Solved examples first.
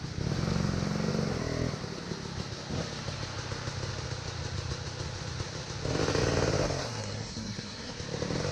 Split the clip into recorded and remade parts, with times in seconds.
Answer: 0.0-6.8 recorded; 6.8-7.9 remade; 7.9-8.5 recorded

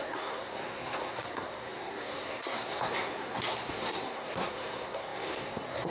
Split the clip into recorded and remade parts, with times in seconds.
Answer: 0.0-5.9 remade

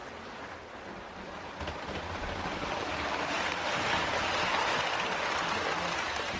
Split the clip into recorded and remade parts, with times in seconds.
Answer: 0.0-6.4 recorded

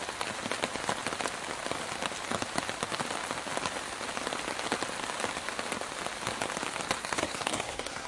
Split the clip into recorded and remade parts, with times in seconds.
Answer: 0.0-7.0 recorded; 7.0-8.1 remade

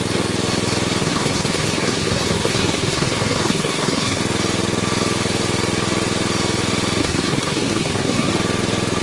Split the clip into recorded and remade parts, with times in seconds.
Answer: 0.0-1.0 recorded; 1.0-4.2 remade; 4.2-7.0 recorded; 7.0-8.3 remade; 8.3-9.0 recorded

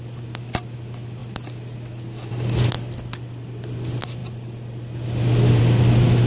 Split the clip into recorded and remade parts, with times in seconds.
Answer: 0.0-6.3 recorded